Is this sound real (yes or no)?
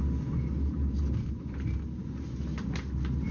yes